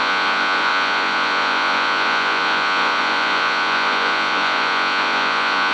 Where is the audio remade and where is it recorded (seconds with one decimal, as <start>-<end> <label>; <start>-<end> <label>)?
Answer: 0.0-5.7 remade